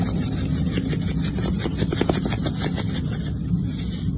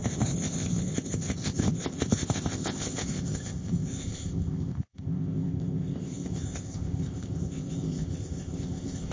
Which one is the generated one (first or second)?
second